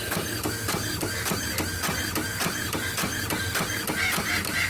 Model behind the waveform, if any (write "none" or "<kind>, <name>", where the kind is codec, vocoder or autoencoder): none